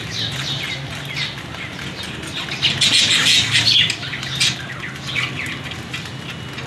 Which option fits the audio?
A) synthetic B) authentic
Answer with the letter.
B